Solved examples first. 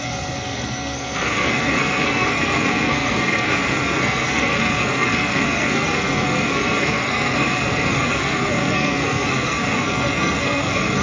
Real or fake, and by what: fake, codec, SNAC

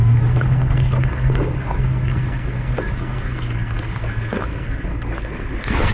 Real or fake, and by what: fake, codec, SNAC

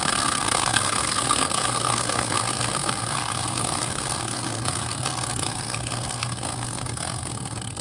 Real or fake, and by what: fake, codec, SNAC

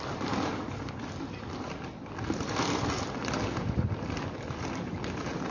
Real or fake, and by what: real